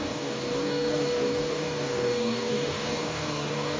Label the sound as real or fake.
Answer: fake